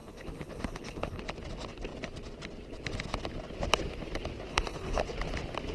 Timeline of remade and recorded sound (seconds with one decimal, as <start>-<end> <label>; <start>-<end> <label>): 0.0-1.2 remade; 1.2-4.5 recorded; 4.5-5.0 remade; 5.0-5.7 recorded